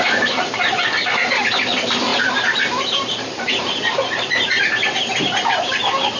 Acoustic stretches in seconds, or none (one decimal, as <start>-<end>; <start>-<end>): 0.0-2.1; 5.7-6.2